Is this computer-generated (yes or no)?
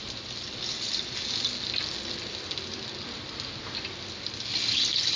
no